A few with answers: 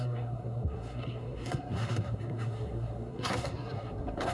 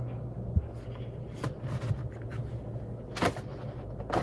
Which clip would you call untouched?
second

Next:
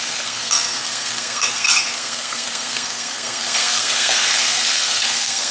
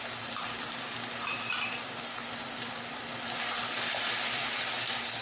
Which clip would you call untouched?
second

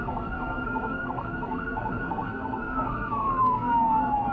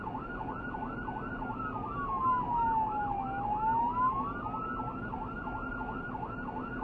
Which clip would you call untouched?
second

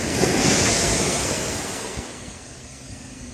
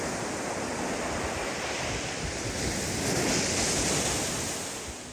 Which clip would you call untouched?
second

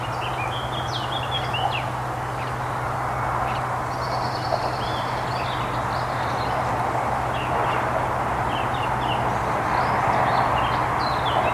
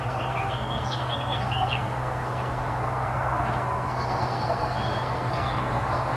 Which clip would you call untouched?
first